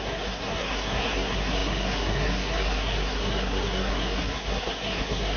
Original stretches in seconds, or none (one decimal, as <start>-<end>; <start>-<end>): none